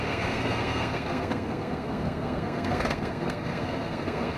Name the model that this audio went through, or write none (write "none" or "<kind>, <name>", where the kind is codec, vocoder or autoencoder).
codec, SNAC